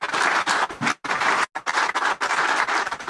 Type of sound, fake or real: real